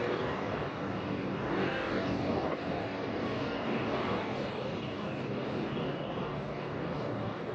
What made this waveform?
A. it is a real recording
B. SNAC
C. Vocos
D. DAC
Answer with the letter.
D